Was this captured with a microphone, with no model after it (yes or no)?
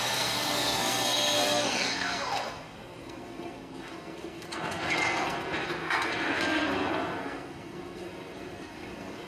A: no